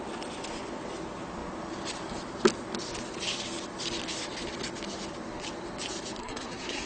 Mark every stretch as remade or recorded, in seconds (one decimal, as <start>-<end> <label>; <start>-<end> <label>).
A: 0.0-6.2 recorded; 6.2-6.9 remade

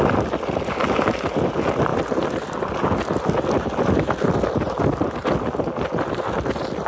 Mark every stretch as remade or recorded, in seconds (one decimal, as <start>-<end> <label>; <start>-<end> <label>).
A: 0.0-6.9 recorded

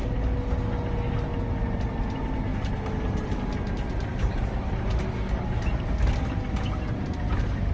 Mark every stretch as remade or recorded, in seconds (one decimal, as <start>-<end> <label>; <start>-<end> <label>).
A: 0.0-7.7 recorded

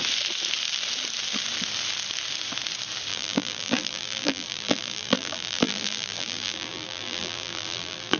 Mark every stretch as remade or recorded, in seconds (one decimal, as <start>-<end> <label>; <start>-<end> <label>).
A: 0.0-3.1 recorded; 3.1-8.2 remade

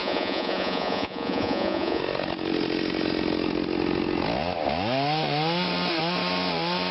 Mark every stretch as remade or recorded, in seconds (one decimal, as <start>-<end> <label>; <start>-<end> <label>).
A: 0.0-2.0 remade; 2.0-6.9 recorded